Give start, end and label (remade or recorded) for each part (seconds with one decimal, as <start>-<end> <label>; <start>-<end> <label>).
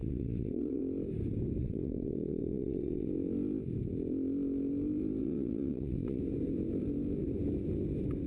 0.0-0.8 remade; 0.8-1.6 recorded; 1.6-3.1 remade; 3.1-5.2 recorded; 5.2-6.2 remade; 6.2-8.3 recorded